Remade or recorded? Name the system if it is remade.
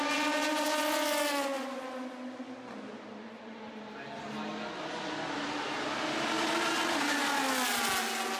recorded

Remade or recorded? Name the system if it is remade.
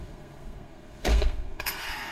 remade, codec, SNAC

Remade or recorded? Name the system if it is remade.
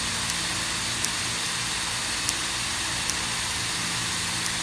recorded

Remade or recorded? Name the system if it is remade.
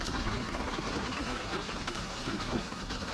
remade, codec, SNAC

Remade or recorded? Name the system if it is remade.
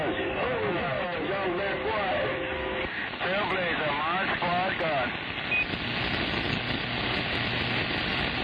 recorded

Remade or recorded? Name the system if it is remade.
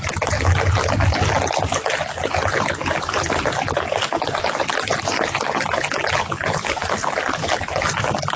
recorded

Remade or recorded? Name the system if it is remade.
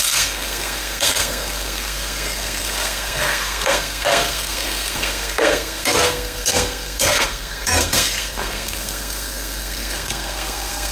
remade, codec, SNAC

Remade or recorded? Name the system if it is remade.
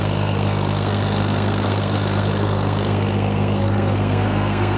remade, codec, SNAC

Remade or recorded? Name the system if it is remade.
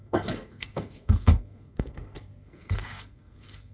remade, codec, SNAC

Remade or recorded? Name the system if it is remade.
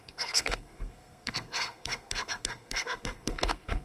remade, codec, SNAC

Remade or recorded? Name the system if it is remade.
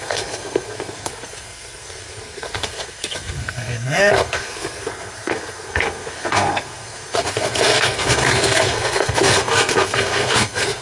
remade, codec, SNAC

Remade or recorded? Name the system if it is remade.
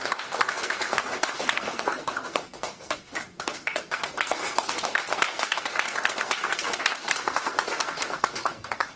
remade, codec, SNAC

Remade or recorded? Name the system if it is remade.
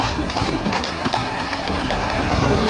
remade, codec, SNAC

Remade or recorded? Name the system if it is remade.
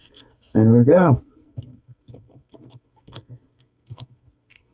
remade, codec, SNAC